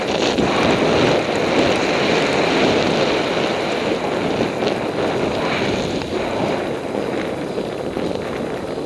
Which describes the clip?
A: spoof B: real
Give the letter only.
B